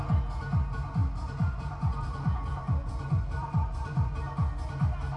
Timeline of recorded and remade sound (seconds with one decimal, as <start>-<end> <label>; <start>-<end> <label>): 0.0-1.0 recorded; 1.0-4.1 remade; 4.1-5.2 recorded